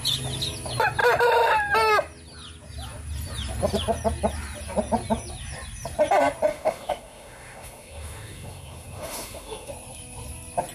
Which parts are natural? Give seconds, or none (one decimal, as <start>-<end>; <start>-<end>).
0.0-6.5; 9.7-10.7

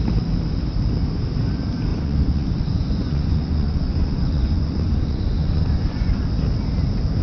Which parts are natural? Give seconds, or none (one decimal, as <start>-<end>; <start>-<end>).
0.0-1.9; 6.2-7.2